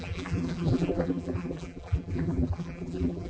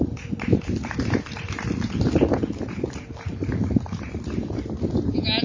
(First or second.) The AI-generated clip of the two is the first